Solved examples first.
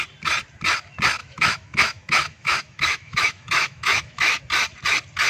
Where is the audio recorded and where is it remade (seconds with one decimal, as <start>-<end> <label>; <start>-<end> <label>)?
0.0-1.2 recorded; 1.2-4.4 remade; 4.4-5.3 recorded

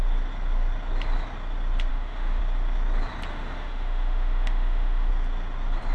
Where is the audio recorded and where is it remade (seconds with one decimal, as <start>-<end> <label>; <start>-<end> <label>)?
0.0-1.9 recorded; 1.9-2.4 remade; 2.4-3.3 recorded; 3.3-5.1 remade; 5.1-5.9 recorded

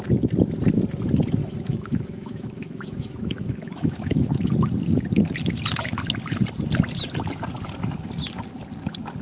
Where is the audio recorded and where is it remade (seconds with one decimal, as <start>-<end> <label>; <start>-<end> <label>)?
0.0-1.4 recorded; 1.4-4.4 remade; 4.4-9.2 recorded

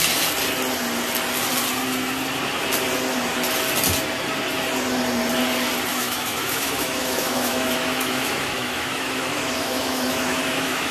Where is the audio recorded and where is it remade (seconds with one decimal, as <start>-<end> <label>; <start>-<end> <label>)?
0.0-5.9 recorded; 5.9-10.9 remade

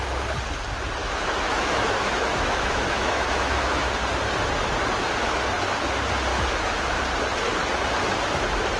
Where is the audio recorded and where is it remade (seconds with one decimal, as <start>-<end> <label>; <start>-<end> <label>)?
0.0-1.0 recorded; 1.0-3.9 remade; 3.9-6.3 recorded; 6.3-7.0 remade; 7.0-8.8 recorded

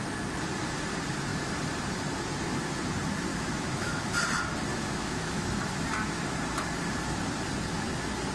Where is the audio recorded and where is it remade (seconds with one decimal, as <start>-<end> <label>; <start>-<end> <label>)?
0.0-3.3 recorded; 3.3-4.1 remade; 4.1-4.7 recorded; 4.7-5.6 remade; 5.6-8.3 recorded

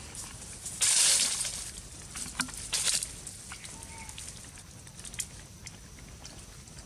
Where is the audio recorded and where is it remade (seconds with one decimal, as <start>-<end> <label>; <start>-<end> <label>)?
0.0-6.9 recorded